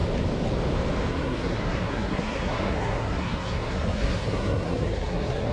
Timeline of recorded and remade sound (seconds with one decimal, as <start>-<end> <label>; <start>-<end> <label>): 0.0-1.1 recorded; 1.1-5.5 remade